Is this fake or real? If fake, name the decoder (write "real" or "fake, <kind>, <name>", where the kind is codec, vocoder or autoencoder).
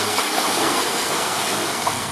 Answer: fake, codec, SNAC